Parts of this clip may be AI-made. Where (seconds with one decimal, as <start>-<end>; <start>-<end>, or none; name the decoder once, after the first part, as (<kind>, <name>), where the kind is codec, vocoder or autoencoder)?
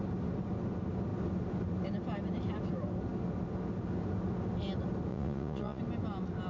5.1-5.8 (vocoder, Vocos)